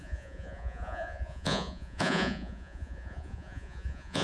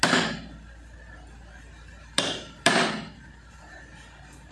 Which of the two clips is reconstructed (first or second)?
first